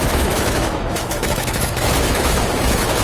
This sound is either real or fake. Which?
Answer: fake